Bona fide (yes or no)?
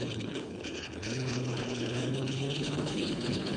no